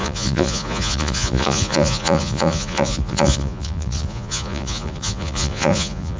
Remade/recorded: remade